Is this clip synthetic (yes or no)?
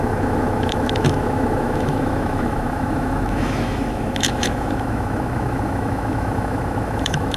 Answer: yes